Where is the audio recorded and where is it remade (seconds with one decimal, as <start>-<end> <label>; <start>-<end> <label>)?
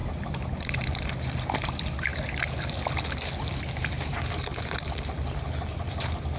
0.0-6.4 recorded